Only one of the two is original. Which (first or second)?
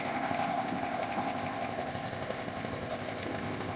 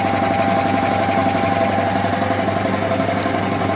second